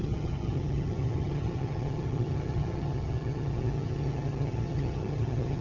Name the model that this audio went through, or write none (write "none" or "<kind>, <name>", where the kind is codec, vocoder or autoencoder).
vocoder, HiFi-GAN